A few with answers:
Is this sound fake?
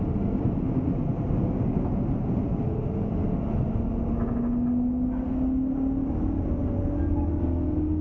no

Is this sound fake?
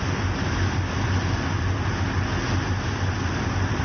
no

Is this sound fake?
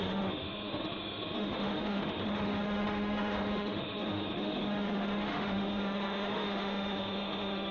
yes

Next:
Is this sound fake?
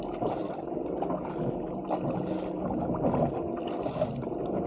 no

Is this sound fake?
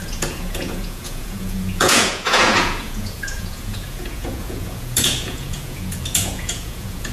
yes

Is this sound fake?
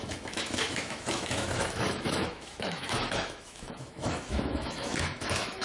yes